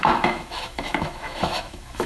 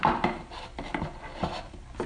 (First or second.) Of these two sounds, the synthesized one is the first